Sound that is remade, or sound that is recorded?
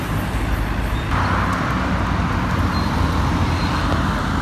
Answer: recorded